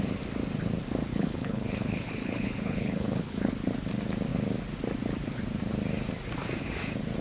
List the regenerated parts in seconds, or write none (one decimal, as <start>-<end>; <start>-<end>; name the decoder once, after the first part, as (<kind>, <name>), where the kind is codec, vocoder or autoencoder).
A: 1.1-3.5 (codec, HILCodec)

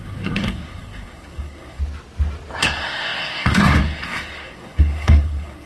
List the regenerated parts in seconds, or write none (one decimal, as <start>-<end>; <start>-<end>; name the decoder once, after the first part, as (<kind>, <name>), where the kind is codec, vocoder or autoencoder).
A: 0.0-1.8 (codec, SNAC); 2.6-5.7

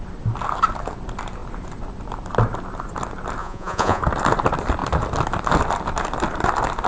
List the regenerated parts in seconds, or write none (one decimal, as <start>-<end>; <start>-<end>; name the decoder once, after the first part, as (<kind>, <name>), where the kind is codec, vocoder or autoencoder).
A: 3.4-4.0 (vocoder, Vocos)

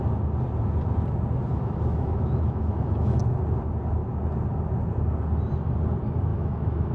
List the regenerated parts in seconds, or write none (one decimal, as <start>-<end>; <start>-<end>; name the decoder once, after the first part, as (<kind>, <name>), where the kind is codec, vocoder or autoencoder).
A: 1.5-3.2 (autoencoder, DAC-VAE); 6.3-6.9